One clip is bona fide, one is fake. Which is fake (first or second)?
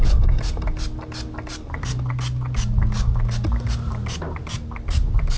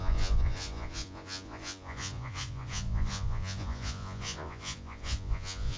second